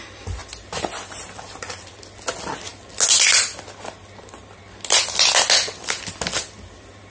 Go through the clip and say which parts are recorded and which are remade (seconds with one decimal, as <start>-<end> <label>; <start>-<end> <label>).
0.0-0.4 recorded; 0.4-2.0 remade; 2.0-7.1 recorded